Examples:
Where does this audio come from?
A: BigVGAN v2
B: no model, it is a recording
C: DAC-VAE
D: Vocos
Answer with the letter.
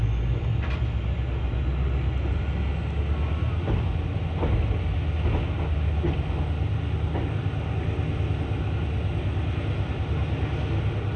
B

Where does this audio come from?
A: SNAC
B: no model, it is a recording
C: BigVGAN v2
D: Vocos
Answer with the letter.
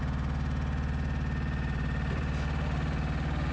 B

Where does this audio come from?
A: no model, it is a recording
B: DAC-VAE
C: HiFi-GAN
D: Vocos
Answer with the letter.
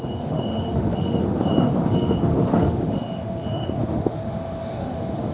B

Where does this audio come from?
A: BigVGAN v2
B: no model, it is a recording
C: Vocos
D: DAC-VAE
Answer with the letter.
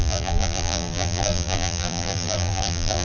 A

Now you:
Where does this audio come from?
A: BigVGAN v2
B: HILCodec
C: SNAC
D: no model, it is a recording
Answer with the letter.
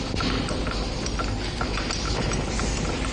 D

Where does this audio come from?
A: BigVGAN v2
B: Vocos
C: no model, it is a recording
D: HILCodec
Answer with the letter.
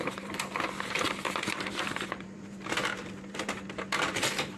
A